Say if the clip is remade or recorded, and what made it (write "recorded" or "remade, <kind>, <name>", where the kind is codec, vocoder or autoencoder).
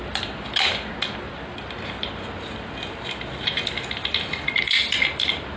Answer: recorded